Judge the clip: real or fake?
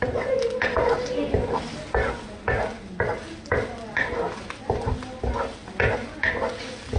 real